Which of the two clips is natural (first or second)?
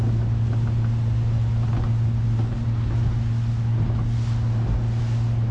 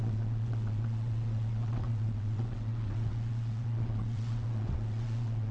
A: first